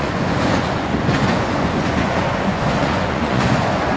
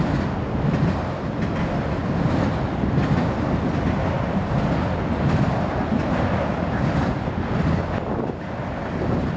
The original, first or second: second